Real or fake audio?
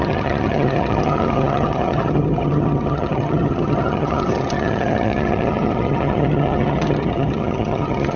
fake